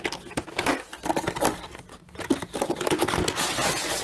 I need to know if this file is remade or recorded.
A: recorded